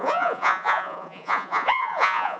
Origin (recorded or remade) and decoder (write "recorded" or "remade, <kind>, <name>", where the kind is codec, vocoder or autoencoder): remade, vocoder, Vocos